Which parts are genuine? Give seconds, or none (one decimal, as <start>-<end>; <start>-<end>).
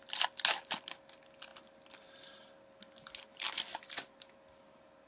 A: 0.0-5.1